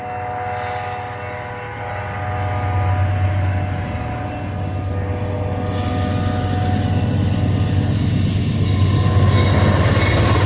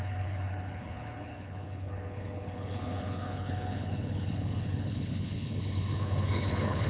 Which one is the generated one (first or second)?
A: second